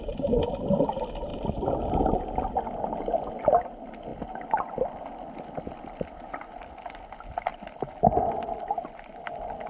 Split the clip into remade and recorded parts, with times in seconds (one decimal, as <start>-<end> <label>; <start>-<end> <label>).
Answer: 0.0-9.7 recorded